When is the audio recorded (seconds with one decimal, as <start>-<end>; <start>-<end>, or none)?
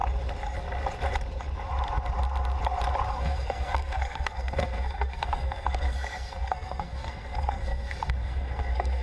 0.0-3.1